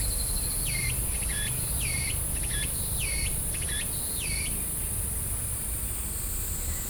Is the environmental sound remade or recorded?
remade